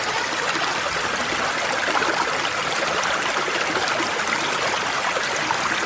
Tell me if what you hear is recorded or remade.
recorded